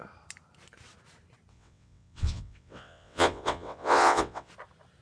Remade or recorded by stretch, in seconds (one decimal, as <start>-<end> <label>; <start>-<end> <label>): 0.0-1.5 recorded; 1.5-4.5 remade; 4.5-5.0 recorded